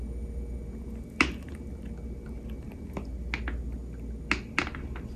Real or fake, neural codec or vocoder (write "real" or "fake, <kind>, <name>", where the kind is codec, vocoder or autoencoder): real